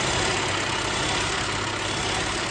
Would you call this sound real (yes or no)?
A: yes